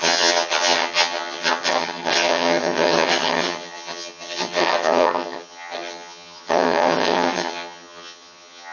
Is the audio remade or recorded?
remade